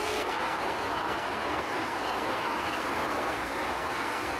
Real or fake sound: fake